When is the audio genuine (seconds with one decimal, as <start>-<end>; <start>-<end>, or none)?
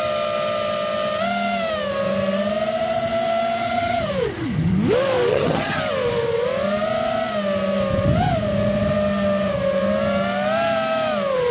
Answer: 0.0-3.6; 4.1-5.3; 5.8-11.5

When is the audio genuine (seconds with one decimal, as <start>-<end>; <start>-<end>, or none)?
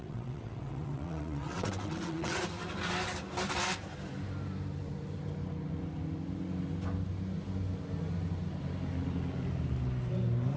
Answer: 2.4-10.6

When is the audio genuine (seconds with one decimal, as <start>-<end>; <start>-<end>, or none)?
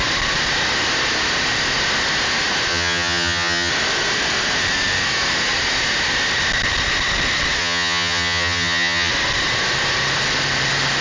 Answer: 0.0-2.7; 3.7-7.6; 9.1-11.0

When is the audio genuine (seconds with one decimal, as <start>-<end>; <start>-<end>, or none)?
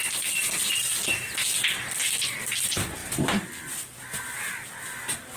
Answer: 0.0-5.4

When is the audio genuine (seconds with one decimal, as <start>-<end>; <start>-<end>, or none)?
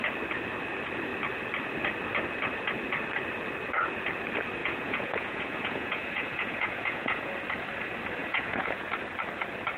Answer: 0.0-4.6; 7.3-8.2; 8.9-9.8